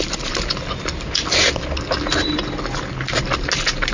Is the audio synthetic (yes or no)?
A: no